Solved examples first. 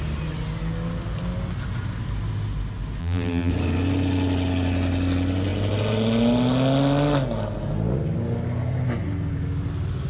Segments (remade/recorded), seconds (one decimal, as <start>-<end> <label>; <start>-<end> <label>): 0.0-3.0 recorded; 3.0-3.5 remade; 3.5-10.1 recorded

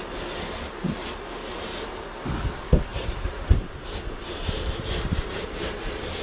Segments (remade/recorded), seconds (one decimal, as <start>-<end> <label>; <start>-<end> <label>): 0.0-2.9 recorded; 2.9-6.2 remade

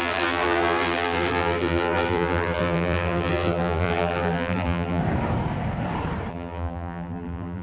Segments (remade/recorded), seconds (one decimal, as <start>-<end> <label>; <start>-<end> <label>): 0.0-5.0 remade; 5.0-6.3 recorded; 6.3-7.6 remade

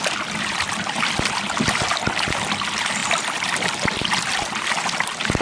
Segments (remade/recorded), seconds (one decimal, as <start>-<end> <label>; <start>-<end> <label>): 0.0-5.4 recorded

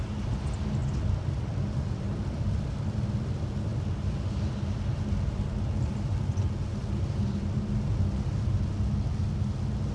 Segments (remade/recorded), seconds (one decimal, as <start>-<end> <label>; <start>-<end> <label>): 0.0-0.8 recorded; 0.8-3.2 remade; 3.2-9.9 recorded

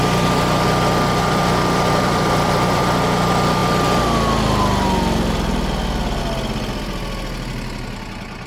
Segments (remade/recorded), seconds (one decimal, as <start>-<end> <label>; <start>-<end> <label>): 0.0-1.2 recorded; 1.2-2.8 remade; 2.8-8.5 recorded

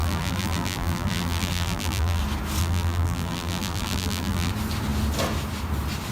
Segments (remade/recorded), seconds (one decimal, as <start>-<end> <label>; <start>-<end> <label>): 0.0-2.2 remade; 2.2-2.6 recorded; 2.6-4.5 remade; 4.5-6.1 recorded

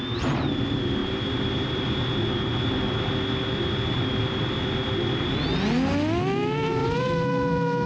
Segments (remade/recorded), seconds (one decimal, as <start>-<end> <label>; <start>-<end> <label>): 0.0-1.0 recorded; 1.0-1.8 remade; 1.8-7.9 recorded